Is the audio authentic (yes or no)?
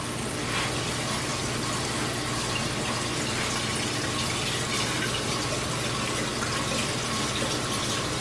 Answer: yes